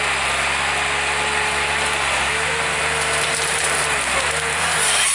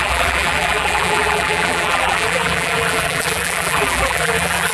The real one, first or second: first